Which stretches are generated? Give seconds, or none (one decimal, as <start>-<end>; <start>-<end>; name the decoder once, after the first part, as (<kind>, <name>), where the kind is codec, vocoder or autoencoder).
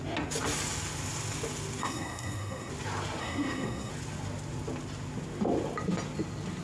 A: 1.8-2.7 (codec, SNAC); 3.2-3.9